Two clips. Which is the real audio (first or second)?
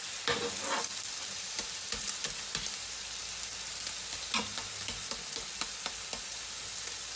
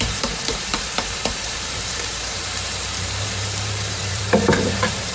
first